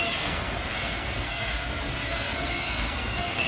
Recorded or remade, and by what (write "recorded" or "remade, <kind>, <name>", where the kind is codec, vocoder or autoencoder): remade, codec, SNAC